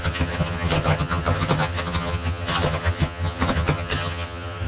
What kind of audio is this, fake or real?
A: fake